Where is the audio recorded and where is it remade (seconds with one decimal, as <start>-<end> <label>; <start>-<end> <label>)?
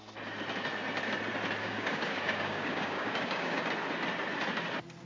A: 0.0-1.6 recorded; 1.6-3.6 remade; 3.6-5.1 recorded